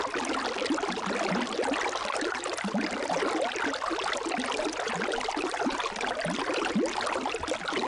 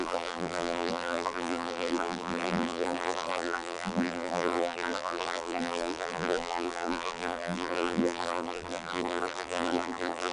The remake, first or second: second